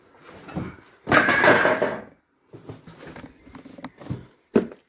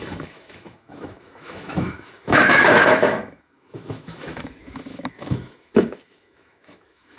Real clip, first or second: first